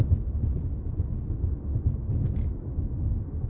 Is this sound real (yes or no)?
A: no